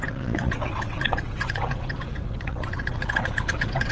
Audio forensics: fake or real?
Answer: fake